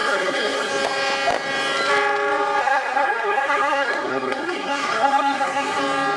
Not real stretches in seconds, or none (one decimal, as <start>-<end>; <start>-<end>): 0.0-0.7; 2.6-5.8